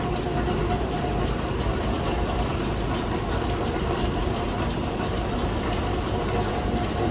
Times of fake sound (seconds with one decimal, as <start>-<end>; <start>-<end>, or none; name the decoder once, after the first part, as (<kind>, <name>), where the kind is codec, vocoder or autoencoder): none